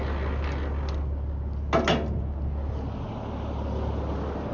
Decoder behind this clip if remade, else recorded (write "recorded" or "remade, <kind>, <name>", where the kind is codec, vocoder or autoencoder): recorded